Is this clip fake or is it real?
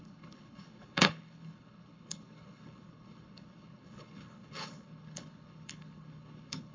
fake